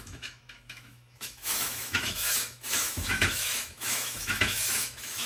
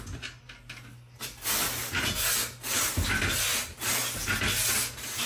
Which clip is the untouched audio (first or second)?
second